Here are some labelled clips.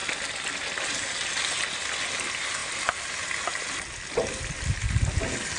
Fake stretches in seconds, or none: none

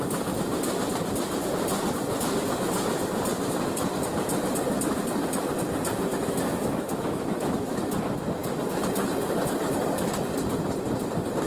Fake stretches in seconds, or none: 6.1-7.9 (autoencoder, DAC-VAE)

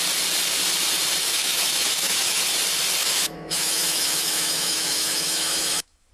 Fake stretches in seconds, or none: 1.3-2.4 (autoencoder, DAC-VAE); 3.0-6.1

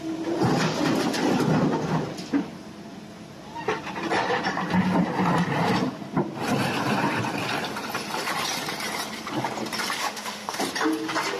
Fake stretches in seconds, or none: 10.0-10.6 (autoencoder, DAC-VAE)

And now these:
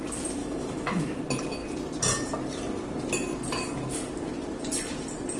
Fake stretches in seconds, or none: 0.4-1.2 (autoencoder, DAC-VAE)